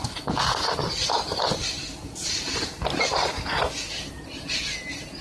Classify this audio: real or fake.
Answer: real